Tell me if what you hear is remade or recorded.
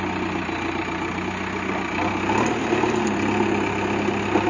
recorded